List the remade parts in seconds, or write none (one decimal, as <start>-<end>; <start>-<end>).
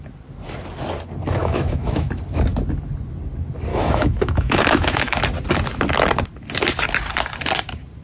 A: 1.4-2.1; 3.7-5.2